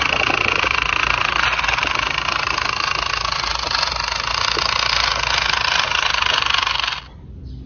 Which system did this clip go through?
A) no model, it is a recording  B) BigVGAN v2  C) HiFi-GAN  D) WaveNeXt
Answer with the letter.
A